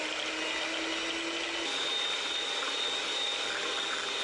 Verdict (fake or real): real